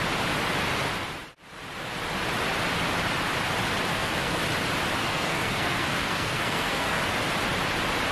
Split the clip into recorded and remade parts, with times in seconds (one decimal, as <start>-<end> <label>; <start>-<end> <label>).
0.0-3.9 recorded; 3.9-4.4 remade; 4.4-5.0 recorded; 5.0-7.0 remade; 7.0-8.1 recorded